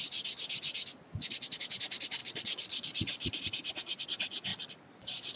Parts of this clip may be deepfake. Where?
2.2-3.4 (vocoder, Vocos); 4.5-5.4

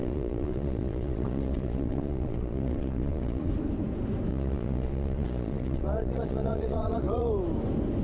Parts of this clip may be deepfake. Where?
0.0-3.5 (vocoder, Vocos); 4.3-7.3

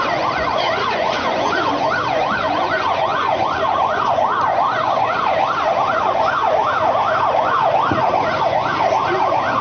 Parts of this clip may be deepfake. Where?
0.0-6.6 (vocoder, Vocos); 7.4-9.6

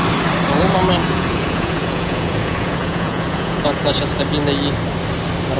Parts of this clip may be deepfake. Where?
1.0-4.2 (vocoder, Vocos)

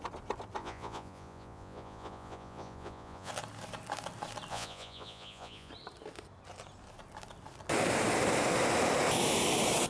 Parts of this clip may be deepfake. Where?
0.6-3.3 (vocoder, Vocos); 4.5-5.7

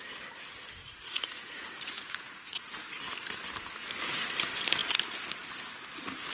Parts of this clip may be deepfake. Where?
0.8-3.0 (vocoder, Vocos)